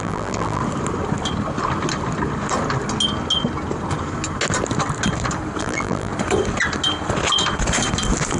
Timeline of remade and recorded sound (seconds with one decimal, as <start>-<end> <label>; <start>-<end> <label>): 0.0-0.6 remade; 0.6-5.6 recorded; 5.6-6.1 remade; 6.1-8.4 recorded